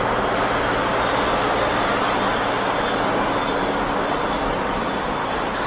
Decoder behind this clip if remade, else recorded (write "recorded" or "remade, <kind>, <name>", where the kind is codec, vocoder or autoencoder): recorded